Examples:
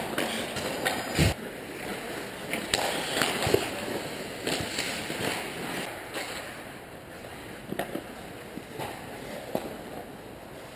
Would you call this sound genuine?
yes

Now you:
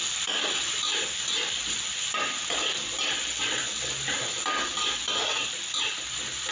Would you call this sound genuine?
yes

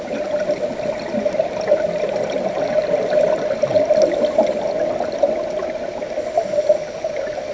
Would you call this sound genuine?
yes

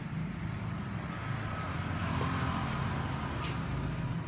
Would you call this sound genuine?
yes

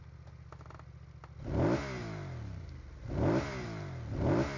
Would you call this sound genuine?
yes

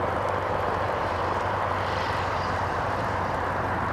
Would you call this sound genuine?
no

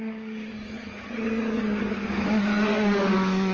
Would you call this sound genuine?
no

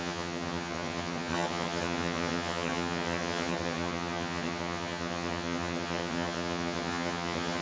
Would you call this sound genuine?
no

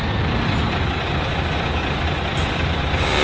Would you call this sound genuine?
yes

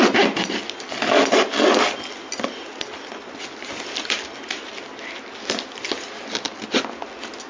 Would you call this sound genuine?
yes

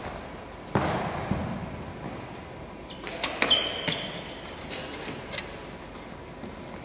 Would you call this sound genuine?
yes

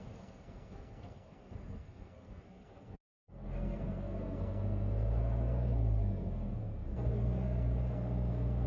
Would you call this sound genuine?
no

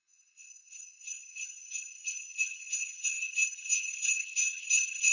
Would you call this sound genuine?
no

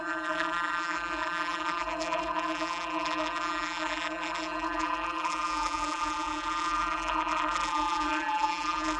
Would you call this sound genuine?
no